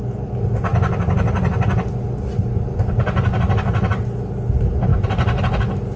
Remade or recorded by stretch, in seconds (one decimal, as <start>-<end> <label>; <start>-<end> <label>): 0.0-6.0 recorded